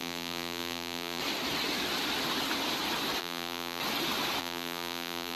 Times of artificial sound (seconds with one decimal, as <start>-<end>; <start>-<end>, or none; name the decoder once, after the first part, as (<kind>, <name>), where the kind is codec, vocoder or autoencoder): 0.0-1.2 (vocoder, BigVGAN v2); 3.2-3.8; 4.4-5.4